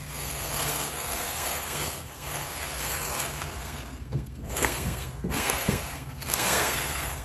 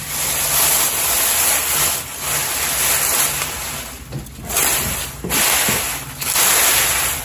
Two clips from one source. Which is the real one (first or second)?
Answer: second